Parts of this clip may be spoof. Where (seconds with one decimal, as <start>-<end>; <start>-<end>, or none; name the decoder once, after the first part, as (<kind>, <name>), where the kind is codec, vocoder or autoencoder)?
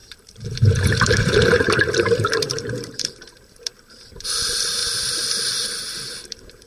0.0-4.8 (vocoder, BigVGAN v2); 6.3-6.7